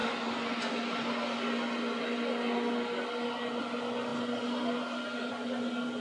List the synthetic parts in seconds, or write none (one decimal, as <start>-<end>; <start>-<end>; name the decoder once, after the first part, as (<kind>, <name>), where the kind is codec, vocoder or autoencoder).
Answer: none